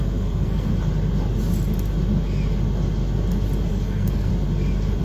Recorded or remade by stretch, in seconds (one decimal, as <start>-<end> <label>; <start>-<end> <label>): 0.0-0.7 remade; 0.7-3.7 recorded; 3.7-4.3 remade; 4.3-5.0 recorded